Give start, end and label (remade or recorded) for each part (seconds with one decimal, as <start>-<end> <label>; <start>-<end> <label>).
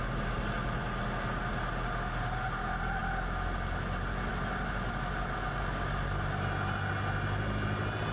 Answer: 0.0-8.1 recorded